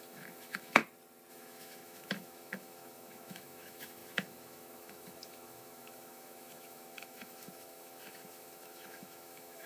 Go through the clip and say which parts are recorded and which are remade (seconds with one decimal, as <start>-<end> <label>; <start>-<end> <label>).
0.0-0.8 remade; 0.8-1.3 recorded; 1.3-9.7 remade